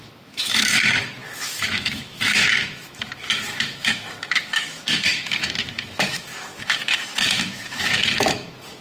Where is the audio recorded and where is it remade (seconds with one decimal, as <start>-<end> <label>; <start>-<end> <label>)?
0.0-8.8 remade